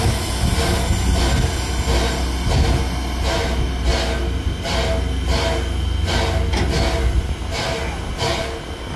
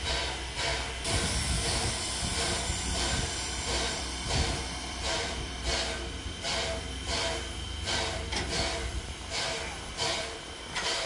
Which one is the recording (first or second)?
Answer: first